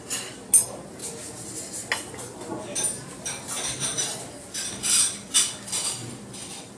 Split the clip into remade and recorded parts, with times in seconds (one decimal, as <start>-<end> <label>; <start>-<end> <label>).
0.0-6.8 recorded